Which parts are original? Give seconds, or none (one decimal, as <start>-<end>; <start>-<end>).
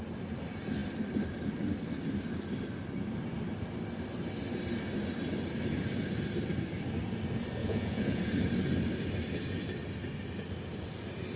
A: 0.0-7.6; 8.2-11.4